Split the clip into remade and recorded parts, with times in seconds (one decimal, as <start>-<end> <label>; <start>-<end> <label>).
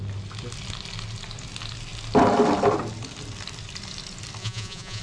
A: 0.0-4.4 recorded; 4.4-5.0 remade